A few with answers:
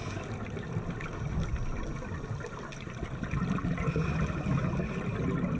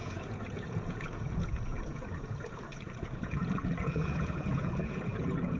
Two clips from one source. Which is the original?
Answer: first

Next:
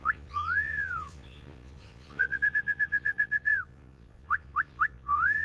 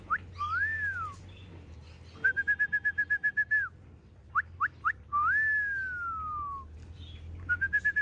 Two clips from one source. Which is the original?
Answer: second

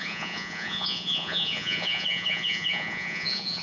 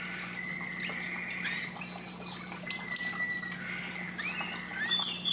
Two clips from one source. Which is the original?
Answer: second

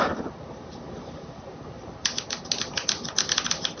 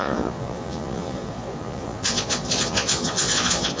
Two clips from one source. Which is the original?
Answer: first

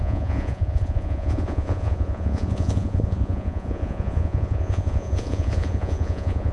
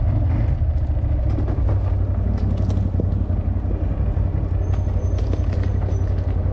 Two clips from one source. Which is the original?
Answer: second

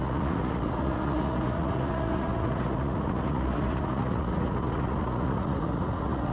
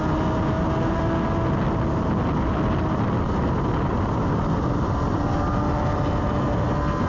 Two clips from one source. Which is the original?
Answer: second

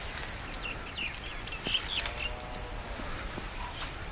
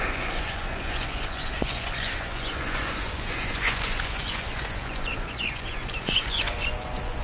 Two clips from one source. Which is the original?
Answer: first